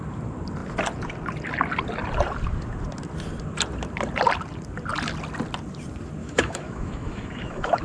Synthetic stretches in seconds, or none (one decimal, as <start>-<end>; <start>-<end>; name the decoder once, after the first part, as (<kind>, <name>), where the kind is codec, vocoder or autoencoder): 6.2-7.8 (autoencoder, DAC-VAE)